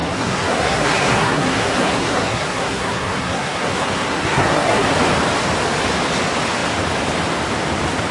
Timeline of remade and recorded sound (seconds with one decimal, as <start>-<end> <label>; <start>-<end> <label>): 0.0-4.9 remade; 4.9-8.1 recorded

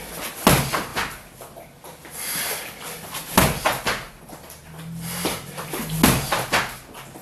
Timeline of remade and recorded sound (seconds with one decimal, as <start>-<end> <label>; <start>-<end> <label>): 0.0-7.2 recorded

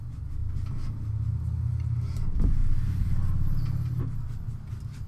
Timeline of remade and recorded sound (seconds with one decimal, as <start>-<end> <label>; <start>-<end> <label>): 0.0-5.1 recorded

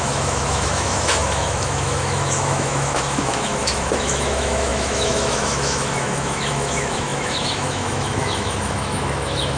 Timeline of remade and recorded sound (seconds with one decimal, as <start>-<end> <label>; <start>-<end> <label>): 0.0-9.6 remade

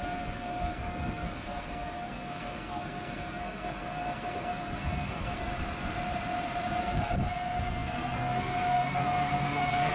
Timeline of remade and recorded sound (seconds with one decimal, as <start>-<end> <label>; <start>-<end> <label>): 0.0-5.5 remade; 5.5-6.8 recorded; 6.8-9.9 remade